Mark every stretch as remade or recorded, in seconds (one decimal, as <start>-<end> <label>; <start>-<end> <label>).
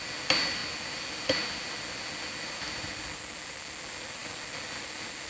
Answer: 0.0-5.3 recorded